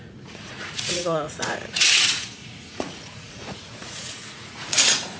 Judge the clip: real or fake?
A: fake